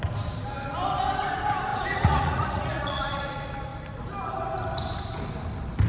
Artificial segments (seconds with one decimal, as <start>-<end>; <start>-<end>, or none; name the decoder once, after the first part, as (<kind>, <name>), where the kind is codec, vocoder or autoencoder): 1.7-3.3 (vocoder, Vocos)

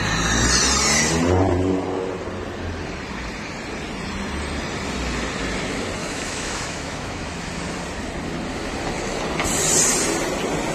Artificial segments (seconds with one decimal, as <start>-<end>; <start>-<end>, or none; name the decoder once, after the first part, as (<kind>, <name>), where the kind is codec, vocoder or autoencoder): 6.0-7.5 (autoencoder, DAC-VAE)

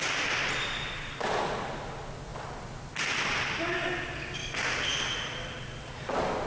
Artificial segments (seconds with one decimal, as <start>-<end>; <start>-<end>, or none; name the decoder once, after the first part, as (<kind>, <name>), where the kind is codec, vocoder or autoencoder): none

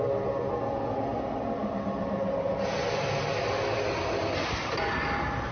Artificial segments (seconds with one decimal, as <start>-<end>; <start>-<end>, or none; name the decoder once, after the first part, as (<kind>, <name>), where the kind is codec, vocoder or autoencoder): none

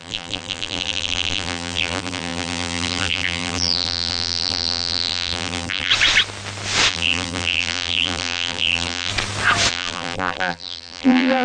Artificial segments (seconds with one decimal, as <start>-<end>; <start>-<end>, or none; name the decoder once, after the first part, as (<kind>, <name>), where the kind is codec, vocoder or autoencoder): 0.0-5.9 (vocoder, BigVGAN v2); 6.9-9.1; 9.7-11.4